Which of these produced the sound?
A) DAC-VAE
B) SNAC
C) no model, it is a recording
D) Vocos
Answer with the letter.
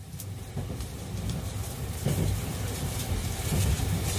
C